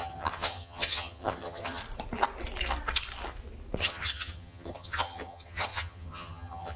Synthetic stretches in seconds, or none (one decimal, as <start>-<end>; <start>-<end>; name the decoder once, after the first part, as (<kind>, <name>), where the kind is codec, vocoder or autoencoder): 0.0-1.8 (vocoder, HiFi-GAN); 3.8-6.8